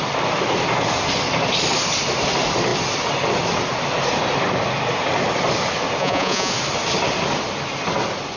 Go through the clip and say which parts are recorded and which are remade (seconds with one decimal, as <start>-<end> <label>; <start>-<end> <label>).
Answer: 0.0-6.0 recorded; 6.0-6.5 remade; 6.5-8.4 recorded